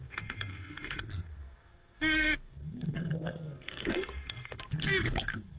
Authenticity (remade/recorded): remade